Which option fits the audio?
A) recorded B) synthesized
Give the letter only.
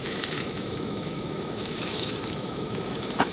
B